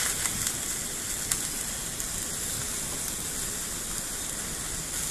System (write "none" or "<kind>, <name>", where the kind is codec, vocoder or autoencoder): none